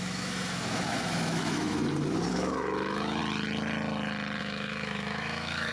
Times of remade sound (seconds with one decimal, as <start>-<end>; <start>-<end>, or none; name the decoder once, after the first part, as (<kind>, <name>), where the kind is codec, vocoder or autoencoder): 0.0-1.8 (autoencoder, DAC-VAE); 2.3-3.2; 4.4-5.7